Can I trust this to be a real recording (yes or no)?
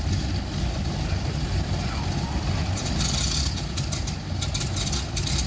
yes